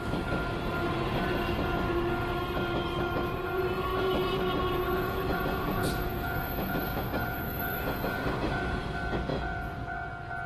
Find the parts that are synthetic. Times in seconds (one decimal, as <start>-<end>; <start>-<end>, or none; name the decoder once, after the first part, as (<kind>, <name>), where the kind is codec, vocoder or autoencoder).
3.9-8.8 (vocoder, Vocos); 9.3-10.1